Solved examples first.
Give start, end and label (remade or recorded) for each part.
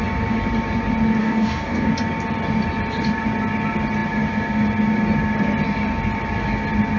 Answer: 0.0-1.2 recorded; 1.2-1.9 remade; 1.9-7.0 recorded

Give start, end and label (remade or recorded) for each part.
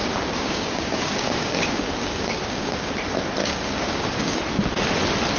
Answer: 0.0-2.9 remade; 2.9-3.4 recorded; 3.4-4.4 remade; 4.4-5.4 recorded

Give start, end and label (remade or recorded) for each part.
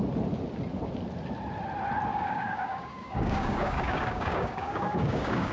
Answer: 0.0-2.1 recorded; 2.1-5.5 remade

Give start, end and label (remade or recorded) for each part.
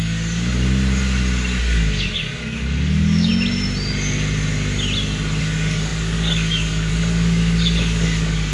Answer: 0.0-0.5 remade; 0.5-1.6 recorded; 1.6-3.3 remade; 3.3-5.4 recorded; 5.4-8.5 remade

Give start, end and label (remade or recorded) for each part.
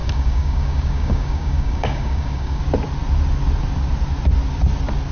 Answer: 0.0-2.6 remade; 2.6-5.1 recorded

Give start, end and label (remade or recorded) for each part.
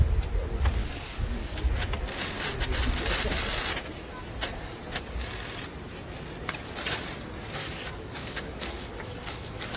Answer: 0.0-0.8 recorded; 0.8-1.6 remade; 1.6-7.6 recorded; 7.6-9.8 remade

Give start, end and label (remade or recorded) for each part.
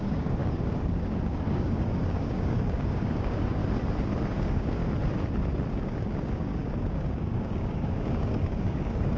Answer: 0.0-3.6 remade; 3.6-4.3 recorded; 4.3-4.8 remade; 4.8-5.7 recorded; 5.7-9.2 remade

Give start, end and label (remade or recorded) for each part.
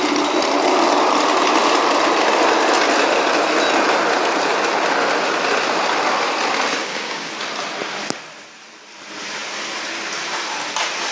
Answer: 0.0-6.8 recorded; 6.8-7.3 remade; 7.3-11.1 recorded